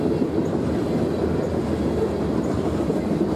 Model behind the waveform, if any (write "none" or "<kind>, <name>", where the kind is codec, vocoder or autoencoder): none